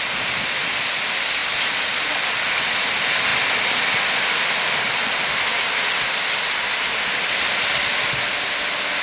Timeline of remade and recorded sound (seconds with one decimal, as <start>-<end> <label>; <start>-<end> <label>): 0.0-1.4 recorded; 1.4-2.3 remade; 2.3-3.3 recorded; 3.3-5.3 remade; 5.3-9.0 recorded